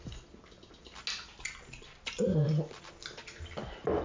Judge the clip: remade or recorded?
recorded